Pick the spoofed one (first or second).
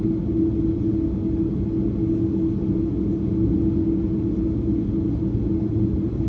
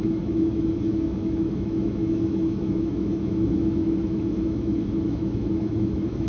second